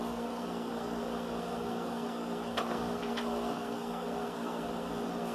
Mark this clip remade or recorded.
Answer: remade